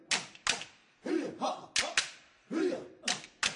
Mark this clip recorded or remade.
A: recorded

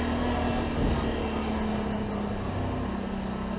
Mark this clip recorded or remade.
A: recorded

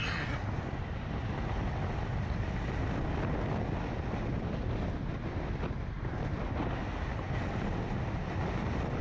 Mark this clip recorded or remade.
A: recorded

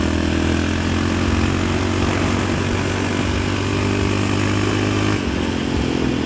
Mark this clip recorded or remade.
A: recorded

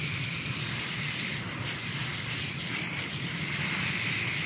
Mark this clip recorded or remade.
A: recorded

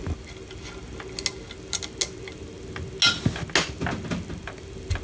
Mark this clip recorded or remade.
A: recorded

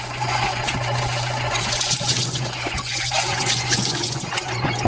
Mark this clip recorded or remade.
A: remade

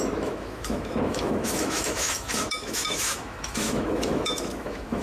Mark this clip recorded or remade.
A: remade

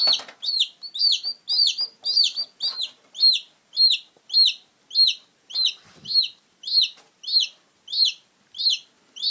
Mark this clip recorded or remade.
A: recorded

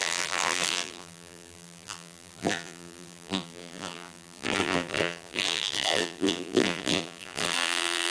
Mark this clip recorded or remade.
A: remade